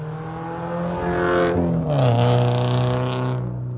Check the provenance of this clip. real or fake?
real